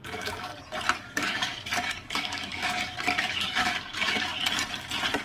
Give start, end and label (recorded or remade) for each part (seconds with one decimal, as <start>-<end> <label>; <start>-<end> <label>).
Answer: 0.0-0.5 remade; 0.5-1.0 recorded; 1.0-4.3 remade; 4.3-5.2 recorded